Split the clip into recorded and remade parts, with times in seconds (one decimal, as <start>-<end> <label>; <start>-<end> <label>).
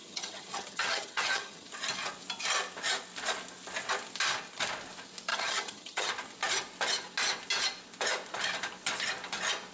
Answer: 0.0-1.7 remade; 1.7-5.3 recorded; 5.3-6.1 remade; 6.1-9.7 recorded